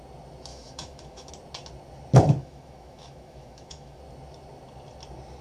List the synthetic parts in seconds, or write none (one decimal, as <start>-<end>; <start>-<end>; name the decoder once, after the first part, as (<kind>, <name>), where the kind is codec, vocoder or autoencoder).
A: 0.5-1.3 (autoencoder, DAC-VAE); 2.4-4.0